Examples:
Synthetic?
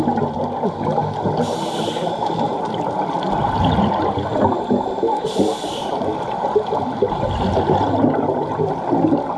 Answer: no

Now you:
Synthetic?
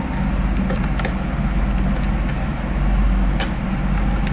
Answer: no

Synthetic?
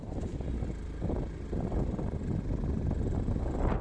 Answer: no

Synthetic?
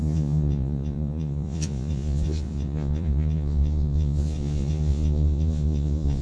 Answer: yes